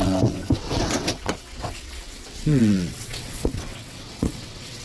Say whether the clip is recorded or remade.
remade